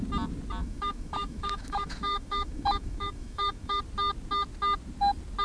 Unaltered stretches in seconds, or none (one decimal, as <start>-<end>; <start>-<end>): 0.0-0.6; 3.8-5.4